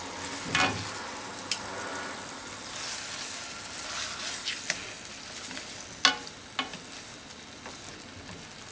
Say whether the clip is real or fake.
real